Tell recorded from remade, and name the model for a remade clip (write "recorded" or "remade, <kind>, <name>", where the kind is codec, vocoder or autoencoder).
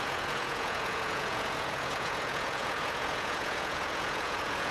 remade, vocoder, Vocos